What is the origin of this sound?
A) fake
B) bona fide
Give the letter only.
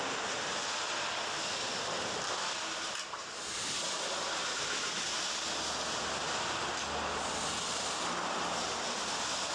B